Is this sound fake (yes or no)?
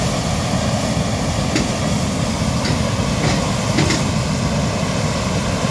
no